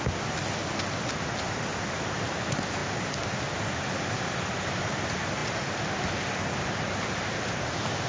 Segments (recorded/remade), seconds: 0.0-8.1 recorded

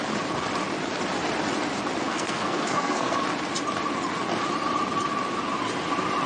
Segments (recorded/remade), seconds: 0.0-2.0 recorded; 2.0-3.2 remade; 3.2-6.3 recorded

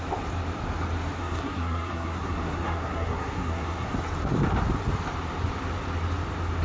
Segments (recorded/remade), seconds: 0.0-1.2 recorded; 1.2-3.9 remade; 3.9-6.6 recorded